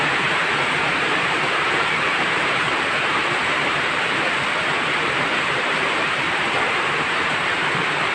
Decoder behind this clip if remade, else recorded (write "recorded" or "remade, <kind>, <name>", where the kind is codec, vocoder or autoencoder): remade, vocoder, BigVGAN v2